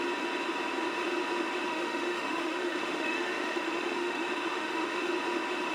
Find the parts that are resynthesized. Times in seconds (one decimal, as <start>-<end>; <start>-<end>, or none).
1.7-5.1